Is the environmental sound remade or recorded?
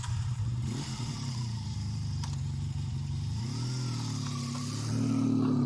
remade